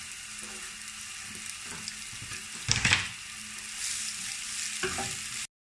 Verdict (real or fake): real